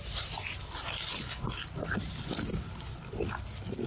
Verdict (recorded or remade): recorded